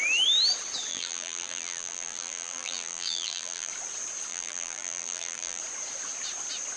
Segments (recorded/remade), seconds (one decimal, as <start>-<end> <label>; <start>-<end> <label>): 0.0-0.9 recorded; 0.9-3.7 remade; 3.7-4.3 recorded; 4.3-5.6 remade; 5.6-6.8 recorded